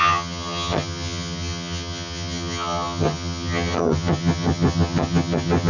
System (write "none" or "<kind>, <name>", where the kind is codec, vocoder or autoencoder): vocoder, HiFi-GAN